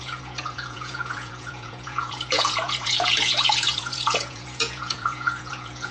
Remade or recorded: remade